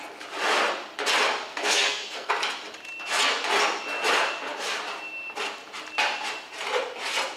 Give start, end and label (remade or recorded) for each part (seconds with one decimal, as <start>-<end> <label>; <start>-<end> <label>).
0.0-1.5 recorded; 1.5-2.3 remade; 2.3-7.4 recorded